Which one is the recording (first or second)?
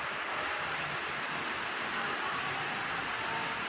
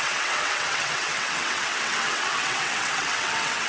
first